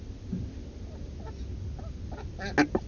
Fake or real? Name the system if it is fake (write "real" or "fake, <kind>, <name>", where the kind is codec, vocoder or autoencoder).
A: real